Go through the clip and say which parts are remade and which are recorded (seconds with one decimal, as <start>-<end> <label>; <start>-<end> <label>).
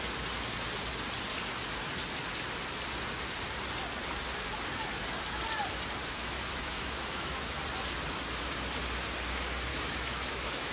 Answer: 0.0-6.0 recorded; 6.0-7.6 remade; 7.6-9.7 recorded; 9.7-10.7 remade